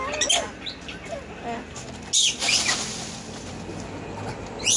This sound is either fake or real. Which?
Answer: real